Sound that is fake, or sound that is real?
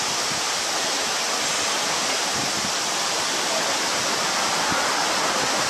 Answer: real